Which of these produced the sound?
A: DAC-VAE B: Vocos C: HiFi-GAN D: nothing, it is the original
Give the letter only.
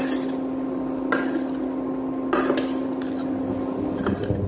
D